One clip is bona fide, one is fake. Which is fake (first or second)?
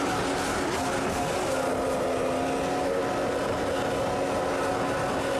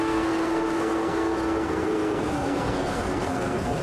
second